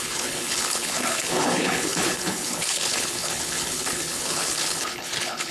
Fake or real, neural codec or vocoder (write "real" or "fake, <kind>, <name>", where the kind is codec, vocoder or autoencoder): fake, codec, HILCodec